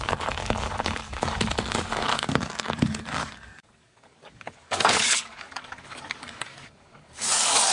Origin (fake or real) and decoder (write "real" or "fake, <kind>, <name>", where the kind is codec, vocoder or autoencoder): fake, codec, DAC